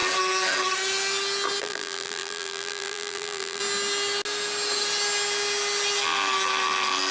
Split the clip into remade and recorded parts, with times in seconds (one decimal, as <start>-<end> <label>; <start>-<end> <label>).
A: 0.0-1.6 recorded; 1.6-3.6 remade; 3.6-7.1 recorded